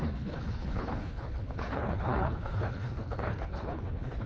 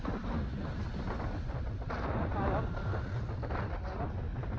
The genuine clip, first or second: second